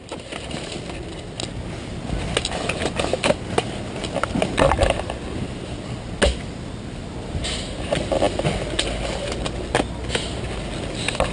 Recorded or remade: recorded